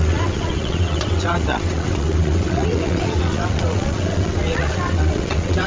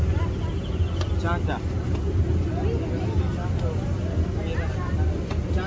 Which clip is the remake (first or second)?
first